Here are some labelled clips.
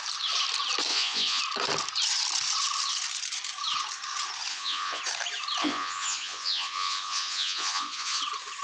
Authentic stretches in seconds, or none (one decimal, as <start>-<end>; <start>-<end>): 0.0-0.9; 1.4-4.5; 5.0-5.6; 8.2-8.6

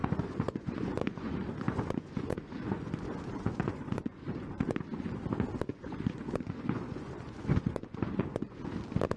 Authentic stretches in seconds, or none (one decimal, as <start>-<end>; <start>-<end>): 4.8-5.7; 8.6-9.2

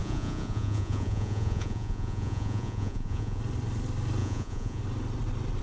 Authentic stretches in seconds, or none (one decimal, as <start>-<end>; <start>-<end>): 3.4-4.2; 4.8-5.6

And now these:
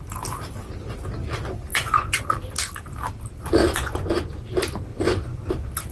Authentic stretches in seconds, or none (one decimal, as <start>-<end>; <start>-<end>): 0.0-1.7; 2.2-3.6; 4.3-4.9; 5.5-5.9